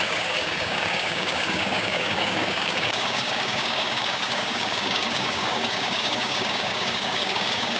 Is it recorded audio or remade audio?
remade